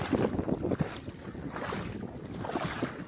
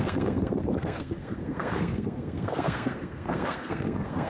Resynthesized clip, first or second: second